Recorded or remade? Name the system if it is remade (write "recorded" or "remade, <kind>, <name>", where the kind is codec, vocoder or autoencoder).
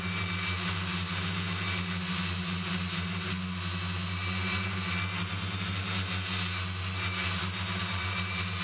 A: recorded